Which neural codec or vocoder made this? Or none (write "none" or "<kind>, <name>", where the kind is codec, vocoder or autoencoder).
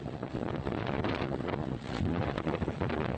vocoder, Vocos